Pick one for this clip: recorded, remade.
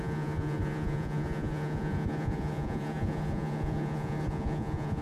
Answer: remade